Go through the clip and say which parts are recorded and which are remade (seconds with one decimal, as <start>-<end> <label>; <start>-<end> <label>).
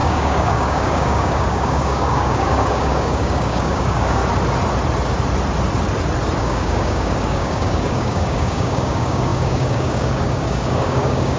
0.0-4.2 remade; 4.2-6.4 recorded; 6.4-11.4 remade